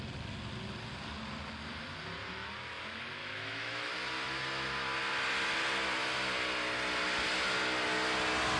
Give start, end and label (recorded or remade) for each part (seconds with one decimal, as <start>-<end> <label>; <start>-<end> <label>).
0.0-3.2 recorded; 3.2-3.9 remade; 3.9-8.6 recorded